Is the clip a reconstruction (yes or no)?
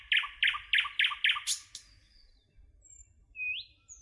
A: no